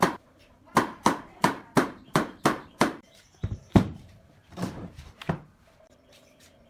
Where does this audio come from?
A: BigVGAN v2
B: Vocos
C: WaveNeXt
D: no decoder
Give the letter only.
A